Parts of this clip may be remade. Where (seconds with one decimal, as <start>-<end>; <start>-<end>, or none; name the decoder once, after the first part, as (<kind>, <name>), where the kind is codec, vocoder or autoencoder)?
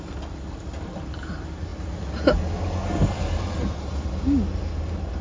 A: none